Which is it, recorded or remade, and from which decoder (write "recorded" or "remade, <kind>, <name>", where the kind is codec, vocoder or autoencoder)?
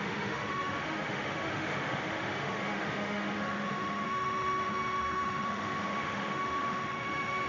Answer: remade, autoencoder, DAC-VAE